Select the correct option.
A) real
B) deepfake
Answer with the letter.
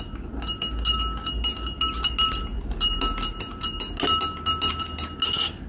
A